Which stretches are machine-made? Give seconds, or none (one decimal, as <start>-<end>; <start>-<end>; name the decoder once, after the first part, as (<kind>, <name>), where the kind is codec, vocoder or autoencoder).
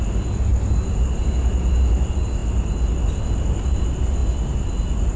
none